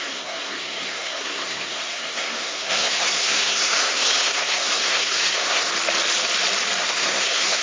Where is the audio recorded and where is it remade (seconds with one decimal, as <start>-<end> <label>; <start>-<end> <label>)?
0.0-5.7 remade; 5.7-6.8 recorded; 6.8-7.6 remade